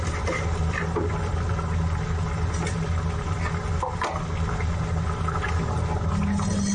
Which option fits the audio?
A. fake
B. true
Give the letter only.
B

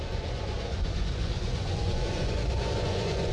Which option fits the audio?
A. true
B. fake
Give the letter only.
B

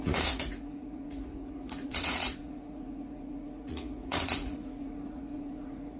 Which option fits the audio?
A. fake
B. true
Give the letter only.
A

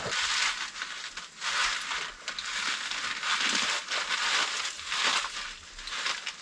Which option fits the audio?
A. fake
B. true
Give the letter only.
B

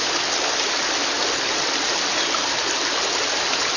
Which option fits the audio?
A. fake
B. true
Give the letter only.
B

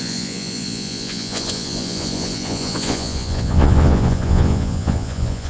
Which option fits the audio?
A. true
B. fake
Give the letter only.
B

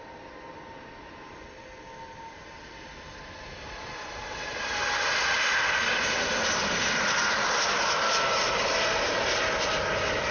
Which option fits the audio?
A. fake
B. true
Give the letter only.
B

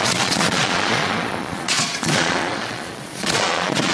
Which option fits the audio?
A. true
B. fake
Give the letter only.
B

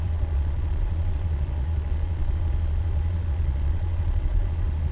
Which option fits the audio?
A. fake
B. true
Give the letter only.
A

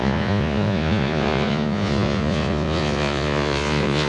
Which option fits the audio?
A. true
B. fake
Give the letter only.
B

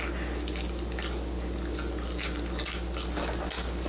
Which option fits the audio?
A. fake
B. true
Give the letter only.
B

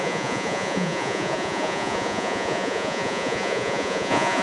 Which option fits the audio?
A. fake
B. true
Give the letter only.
A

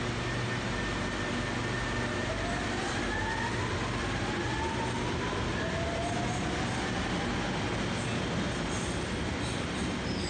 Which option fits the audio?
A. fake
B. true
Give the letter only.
B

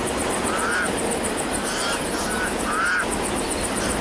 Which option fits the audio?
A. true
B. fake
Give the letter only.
A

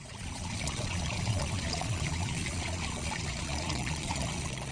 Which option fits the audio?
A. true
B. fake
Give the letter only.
B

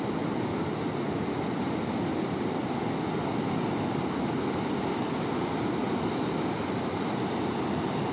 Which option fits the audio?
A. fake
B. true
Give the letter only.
B